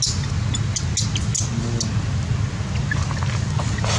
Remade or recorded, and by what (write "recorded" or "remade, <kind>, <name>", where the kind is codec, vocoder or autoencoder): recorded